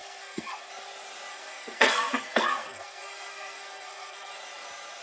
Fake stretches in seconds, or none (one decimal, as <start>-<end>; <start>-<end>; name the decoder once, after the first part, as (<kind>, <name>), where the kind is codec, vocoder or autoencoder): 0.0-0.7 (codec, SNAC); 1.3-4.3